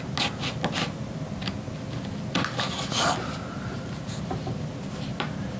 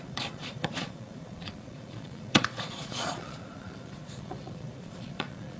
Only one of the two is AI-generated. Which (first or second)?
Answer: second